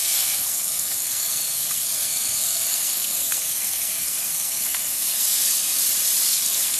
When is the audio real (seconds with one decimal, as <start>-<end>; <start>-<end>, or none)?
5.8-6.3